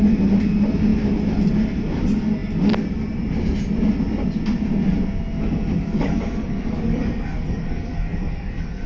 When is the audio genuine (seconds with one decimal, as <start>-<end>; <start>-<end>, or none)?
0.0-5.9